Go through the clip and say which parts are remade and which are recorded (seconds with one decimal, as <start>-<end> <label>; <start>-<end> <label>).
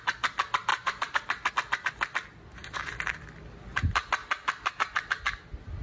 0.0-0.7 recorded; 0.7-1.5 remade; 1.5-2.6 recorded; 2.6-3.1 remade; 3.1-4.2 recorded; 4.2-4.7 remade; 4.7-5.8 recorded